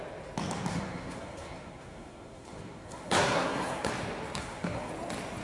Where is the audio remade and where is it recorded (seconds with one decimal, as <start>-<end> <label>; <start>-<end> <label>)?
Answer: 0.0-0.7 recorded; 0.7-3.9 remade; 3.9-4.4 recorded; 4.4-4.9 remade; 4.9-5.4 recorded